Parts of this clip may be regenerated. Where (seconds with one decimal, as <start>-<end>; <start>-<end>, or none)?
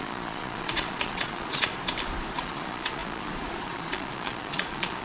0.0-1.7; 2.3-5.0